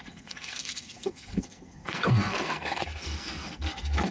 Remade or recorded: remade